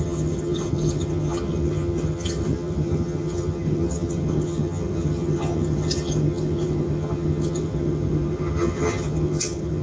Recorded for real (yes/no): no